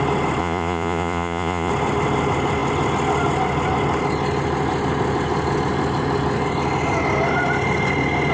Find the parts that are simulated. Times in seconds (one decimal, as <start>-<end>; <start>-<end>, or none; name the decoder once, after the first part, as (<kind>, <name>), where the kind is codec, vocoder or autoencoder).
0.4-1.7 (vocoder, Vocos)